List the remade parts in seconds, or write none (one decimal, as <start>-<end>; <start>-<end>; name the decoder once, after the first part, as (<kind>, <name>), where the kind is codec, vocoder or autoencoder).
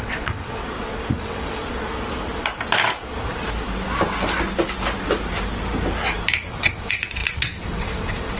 0.0-0.6 (vocoder, WaveNeXt); 1.2-1.6; 6.5-8.4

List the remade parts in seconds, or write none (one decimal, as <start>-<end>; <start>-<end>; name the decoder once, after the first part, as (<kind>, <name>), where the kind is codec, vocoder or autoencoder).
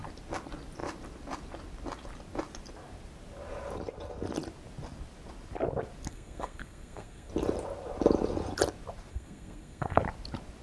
6.1-7.3 (codec, SNAC); 9.1-10.0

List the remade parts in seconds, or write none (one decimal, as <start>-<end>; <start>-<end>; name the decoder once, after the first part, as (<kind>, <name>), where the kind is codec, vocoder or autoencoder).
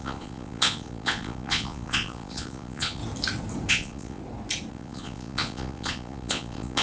0.0-3.0 (vocoder, Vocos); 3.7-4.2; 4.7-6.8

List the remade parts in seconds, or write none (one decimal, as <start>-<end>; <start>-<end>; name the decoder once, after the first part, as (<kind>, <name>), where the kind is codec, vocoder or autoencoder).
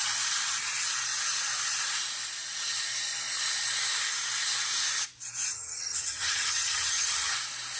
5.5-7.3 (vocoder, HiFi-GAN)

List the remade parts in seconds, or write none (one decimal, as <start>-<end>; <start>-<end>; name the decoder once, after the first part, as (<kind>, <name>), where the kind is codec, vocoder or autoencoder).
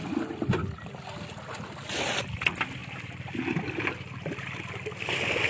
none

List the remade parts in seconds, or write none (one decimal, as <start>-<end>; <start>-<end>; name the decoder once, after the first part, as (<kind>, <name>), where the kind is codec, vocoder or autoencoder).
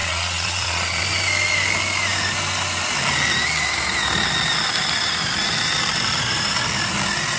0.0-1.0 (vocoder, Vocos)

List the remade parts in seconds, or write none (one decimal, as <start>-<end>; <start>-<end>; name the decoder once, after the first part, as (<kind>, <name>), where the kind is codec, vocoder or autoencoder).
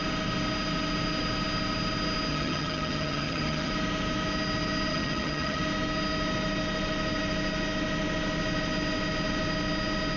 2.3-3.7 (vocoder, HiFi-GAN); 4.9-5.6